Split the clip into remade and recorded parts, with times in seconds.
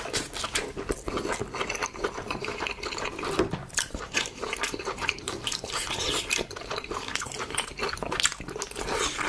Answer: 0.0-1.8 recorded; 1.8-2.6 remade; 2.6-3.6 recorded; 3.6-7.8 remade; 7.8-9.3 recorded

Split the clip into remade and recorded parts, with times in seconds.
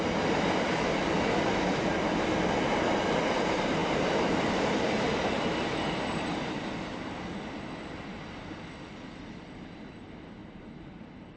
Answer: 0.0-3.8 recorded; 3.8-6.7 remade; 6.7-10.4 recorded; 10.4-11.0 remade; 11.0-11.4 recorded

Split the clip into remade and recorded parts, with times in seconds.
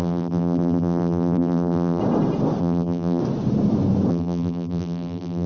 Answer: 0.0-2.0 remade; 2.0-2.6 recorded; 2.6-3.2 remade; 3.2-4.1 recorded; 4.1-5.5 remade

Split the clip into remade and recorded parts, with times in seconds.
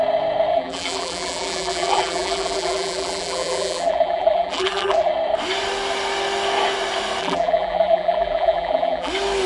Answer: 0.0-0.5 recorded; 0.5-5.1 remade; 5.1-7.2 recorded; 7.2-9.1 remade; 9.1-9.5 recorded